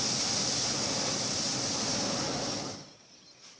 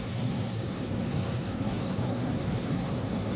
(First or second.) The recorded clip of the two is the first